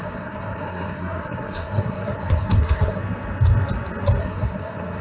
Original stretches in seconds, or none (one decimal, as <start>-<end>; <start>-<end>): 3.0-4.2